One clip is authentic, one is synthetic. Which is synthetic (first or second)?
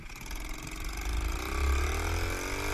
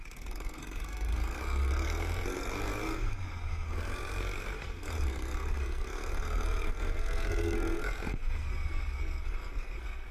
second